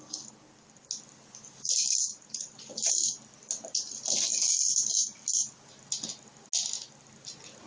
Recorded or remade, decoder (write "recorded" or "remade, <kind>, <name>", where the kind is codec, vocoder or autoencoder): recorded